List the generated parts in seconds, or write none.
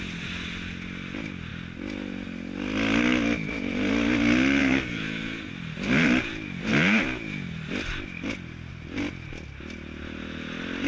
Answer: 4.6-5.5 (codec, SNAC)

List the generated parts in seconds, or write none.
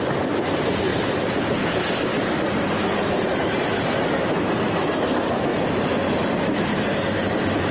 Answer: 0.9-2.3 (vocoder, BigVGAN v2)